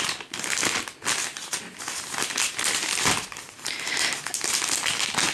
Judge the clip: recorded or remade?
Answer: recorded